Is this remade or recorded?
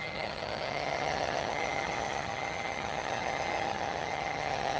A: remade